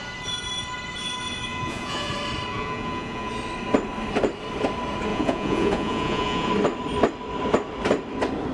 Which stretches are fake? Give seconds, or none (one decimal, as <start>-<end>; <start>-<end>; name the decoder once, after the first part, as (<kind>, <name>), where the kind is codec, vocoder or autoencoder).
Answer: 1.5-2.1 (vocoder, Vocos); 2.5-3.3; 5.1-6.5